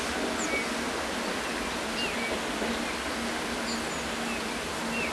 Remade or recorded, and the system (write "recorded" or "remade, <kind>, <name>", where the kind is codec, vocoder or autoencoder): recorded